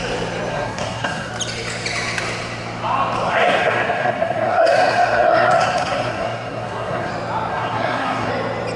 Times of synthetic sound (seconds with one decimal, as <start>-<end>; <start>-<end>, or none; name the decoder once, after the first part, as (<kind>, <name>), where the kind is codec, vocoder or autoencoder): 0.5-1.3 (codec, SNAC); 3.3-7.1; 7.5-8.3